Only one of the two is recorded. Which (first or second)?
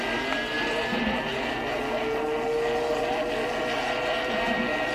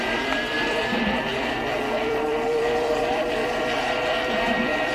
first